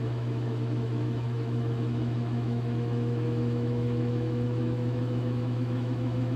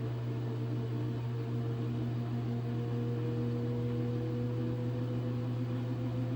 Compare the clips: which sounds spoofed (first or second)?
first